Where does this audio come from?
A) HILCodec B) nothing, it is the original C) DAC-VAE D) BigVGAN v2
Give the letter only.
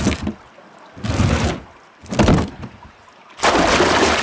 B